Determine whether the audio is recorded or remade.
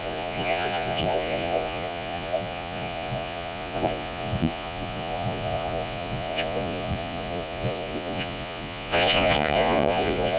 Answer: remade